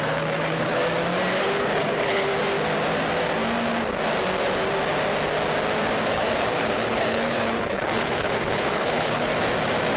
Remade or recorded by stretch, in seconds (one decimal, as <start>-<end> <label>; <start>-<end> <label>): 0.0-0.8 remade; 0.8-1.4 recorded; 1.4-2.3 remade; 2.3-6.1 recorded; 6.1-9.3 remade; 9.3-10.0 recorded